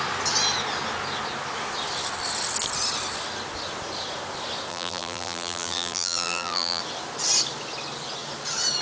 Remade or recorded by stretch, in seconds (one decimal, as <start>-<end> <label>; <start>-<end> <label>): 0.0-4.7 recorded; 4.7-6.8 remade; 6.8-8.8 recorded